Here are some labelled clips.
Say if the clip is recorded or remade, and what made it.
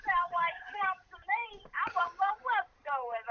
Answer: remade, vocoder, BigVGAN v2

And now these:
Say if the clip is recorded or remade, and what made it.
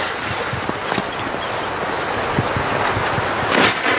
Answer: recorded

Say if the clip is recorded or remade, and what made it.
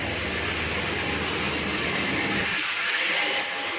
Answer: recorded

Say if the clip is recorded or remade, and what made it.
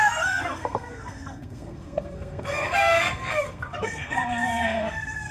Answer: remade, codec, SNAC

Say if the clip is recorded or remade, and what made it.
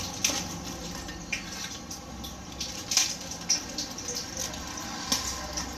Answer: recorded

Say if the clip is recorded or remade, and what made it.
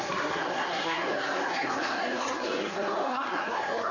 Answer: remade, codec, SNAC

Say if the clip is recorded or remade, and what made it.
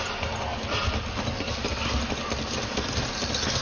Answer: recorded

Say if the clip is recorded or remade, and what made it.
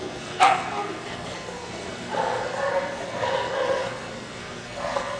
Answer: remade, codec, SNAC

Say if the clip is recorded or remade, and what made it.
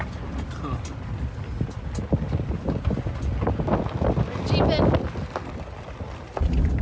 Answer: recorded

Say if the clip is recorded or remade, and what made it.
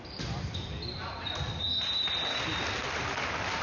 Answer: recorded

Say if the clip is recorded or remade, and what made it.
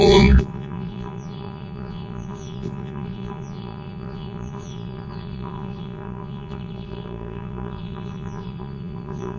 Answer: remade, vocoder, Vocos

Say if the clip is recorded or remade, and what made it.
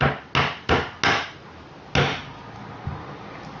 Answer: recorded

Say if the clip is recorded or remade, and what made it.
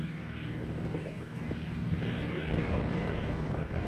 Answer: remade, codec, DAC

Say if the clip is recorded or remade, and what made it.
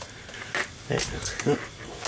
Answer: recorded